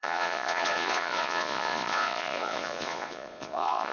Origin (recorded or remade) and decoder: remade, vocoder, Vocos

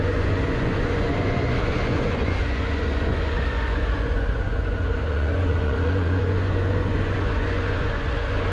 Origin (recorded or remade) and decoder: remade, vocoder, Vocos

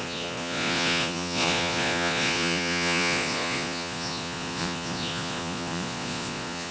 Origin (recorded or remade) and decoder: remade, vocoder, Vocos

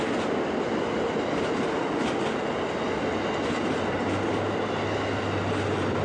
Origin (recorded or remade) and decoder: recorded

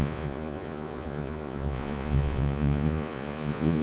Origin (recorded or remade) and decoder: remade, vocoder, Vocos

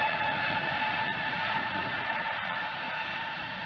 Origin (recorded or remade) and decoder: remade, vocoder, Vocos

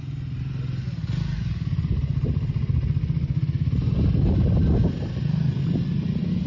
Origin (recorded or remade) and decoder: recorded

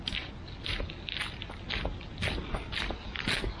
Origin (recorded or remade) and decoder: recorded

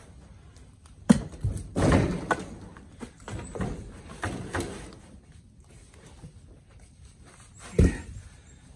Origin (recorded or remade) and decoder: recorded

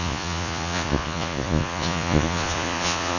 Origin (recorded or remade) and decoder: remade, vocoder, Vocos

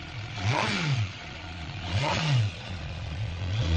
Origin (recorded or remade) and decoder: remade, vocoder, Vocos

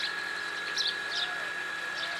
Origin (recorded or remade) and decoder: recorded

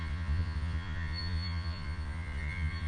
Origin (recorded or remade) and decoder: remade, vocoder, Vocos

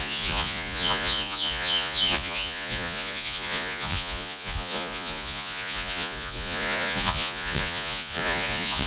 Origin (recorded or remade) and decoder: remade, vocoder, Vocos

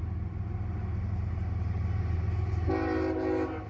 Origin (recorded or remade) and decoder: recorded